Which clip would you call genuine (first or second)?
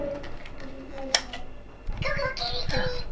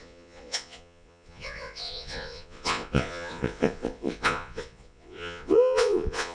first